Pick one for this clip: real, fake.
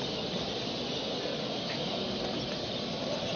real